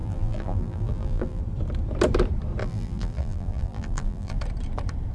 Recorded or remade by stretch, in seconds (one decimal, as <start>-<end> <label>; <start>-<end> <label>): 0.0-1.4 remade; 1.4-2.6 recorded; 2.6-4.4 remade; 4.4-5.1 recorded